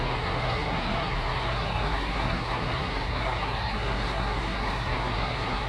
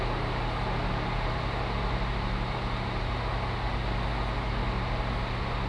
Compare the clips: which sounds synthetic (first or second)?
first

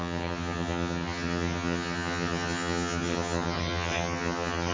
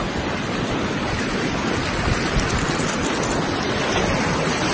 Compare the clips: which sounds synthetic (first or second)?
first